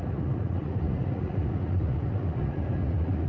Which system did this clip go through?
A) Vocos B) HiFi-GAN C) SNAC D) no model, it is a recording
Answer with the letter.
A